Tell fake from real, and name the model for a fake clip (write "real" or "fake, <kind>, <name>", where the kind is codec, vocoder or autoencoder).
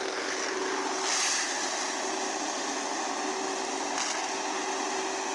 real